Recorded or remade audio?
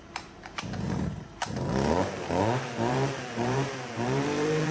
remade